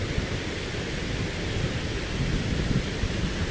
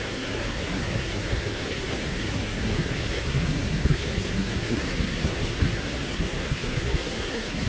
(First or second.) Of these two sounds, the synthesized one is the second